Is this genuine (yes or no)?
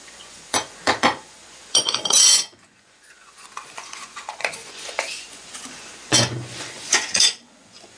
no